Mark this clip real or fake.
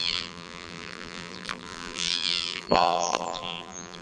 fake